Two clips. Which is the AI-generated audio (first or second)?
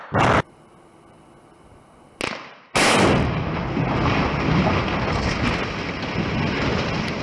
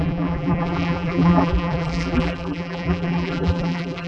second